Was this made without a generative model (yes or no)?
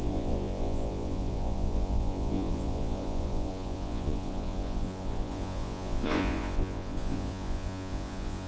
no